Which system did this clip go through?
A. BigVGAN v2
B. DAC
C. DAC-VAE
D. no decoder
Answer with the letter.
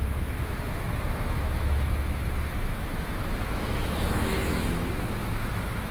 C